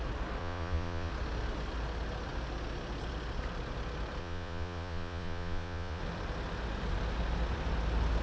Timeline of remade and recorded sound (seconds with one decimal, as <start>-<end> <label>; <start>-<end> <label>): 0.0-0.4 recorded; 0.4-1.1 remade; 1.1-4.2 recorded; 4.2-6.0 remade; 6.0-8.2 recorded